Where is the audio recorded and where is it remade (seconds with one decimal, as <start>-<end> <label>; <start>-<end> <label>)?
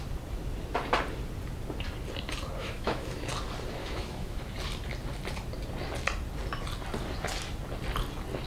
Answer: 0.0-2.6 recorded; 2.6-3.3 remade; 3.3-3.8 recorded; 3.8-4.4 remade; 4.4-8.5 recorded